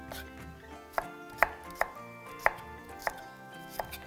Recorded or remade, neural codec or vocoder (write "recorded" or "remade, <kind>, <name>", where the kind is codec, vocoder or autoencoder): recorded